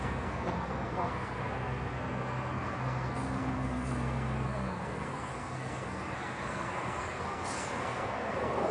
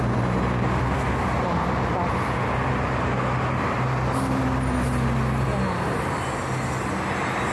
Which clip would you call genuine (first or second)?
second